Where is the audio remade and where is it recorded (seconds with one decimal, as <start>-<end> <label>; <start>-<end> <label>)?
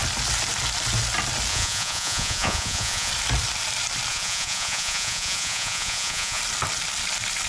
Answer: 0.0-1.5 recorded; 1.5-3.1 remade; 3.1-4.1 recorded; 4.1-6.4 remade; 6.4-7.5 recorded